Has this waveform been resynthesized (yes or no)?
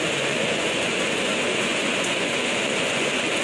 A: yes